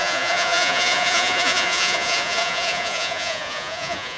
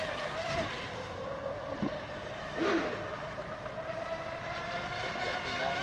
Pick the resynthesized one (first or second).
first